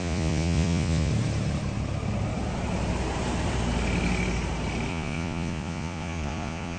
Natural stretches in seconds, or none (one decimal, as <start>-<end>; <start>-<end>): 1.1-4.9